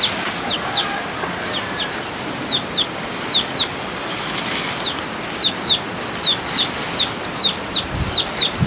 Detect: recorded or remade recorded